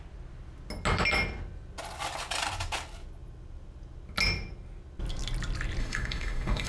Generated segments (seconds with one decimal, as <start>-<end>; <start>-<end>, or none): 5.8-6.7